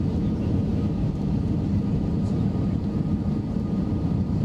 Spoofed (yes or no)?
yes